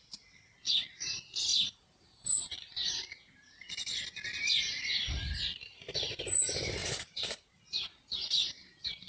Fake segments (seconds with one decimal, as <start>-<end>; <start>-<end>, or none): 1.5-2.7; 6.8-7.6